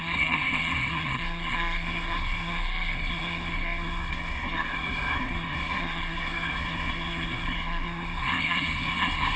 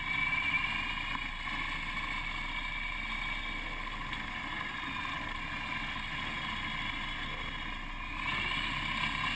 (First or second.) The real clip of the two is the second